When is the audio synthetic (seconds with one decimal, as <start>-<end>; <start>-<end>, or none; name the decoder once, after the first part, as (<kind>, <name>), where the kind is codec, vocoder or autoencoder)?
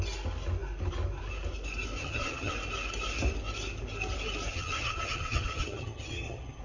2.0-2.5 (vocoder, HiFi-GAN); 4.5-6.6